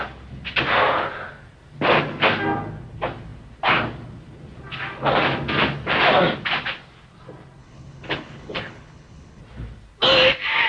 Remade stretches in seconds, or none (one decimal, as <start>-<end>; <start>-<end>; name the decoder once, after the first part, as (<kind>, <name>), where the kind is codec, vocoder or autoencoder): 7.6-9.4 (codec, HILCodec)